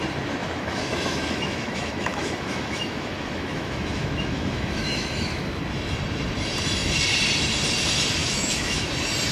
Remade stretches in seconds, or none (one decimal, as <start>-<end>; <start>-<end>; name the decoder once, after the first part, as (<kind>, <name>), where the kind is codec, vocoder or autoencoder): 0.4-5.6 (autoencoder, DAC-VAE); 8.2-8.9